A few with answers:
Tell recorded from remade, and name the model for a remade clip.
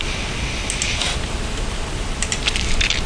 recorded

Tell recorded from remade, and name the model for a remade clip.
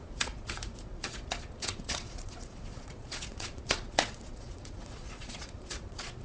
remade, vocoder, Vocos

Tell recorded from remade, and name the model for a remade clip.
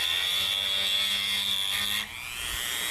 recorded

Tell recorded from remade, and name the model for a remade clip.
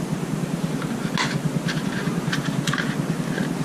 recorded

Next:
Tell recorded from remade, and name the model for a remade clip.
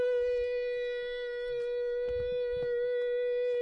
recorded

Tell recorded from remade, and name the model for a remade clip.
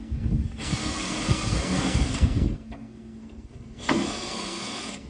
remade, codec, SNAC